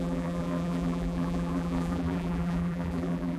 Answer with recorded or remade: remade